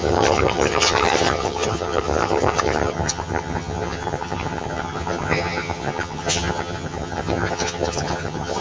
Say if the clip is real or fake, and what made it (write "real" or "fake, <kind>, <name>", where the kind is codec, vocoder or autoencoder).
fake, vocoder, HiFi-GAN